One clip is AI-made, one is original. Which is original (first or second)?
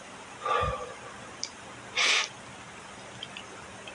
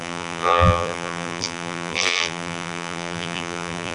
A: first